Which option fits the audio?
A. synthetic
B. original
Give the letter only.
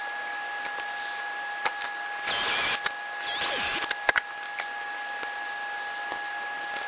B